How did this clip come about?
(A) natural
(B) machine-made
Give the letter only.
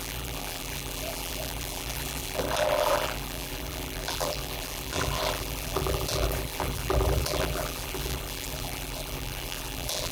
B